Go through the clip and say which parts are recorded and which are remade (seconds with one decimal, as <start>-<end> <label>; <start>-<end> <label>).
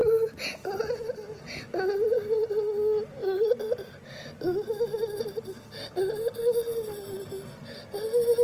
0.0-8.4 recorded